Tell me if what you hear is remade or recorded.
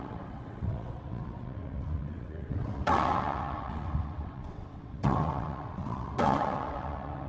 remade